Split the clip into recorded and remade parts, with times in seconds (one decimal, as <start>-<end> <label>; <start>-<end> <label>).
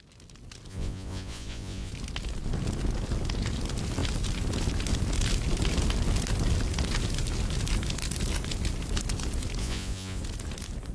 0.0-0.7 recorded; 0.7-1.9 remade; 1.9-9.6 recorded; 9.6-10.2 remade; 10.2-10.9 recorded